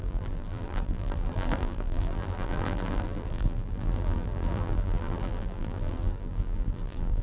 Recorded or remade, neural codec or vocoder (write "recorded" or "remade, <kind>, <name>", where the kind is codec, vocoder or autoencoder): remade, vocoder, BigVGAN v2